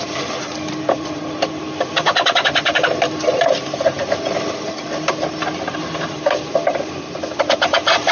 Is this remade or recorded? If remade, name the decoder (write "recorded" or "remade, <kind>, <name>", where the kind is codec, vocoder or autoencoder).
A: remade, vocoder, BigVGAN v2